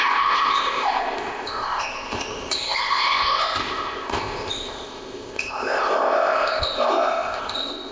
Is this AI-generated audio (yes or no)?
yes